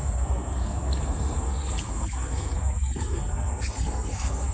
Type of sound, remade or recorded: remade